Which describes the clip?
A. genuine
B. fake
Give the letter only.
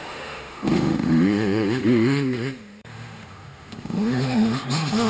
B